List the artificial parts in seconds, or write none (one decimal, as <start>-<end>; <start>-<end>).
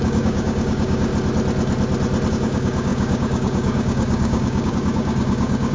0.0-1.1; 2.3-5.7